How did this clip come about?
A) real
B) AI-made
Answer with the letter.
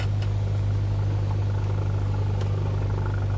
A